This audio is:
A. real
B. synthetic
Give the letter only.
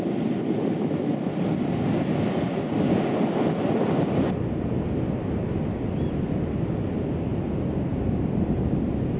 A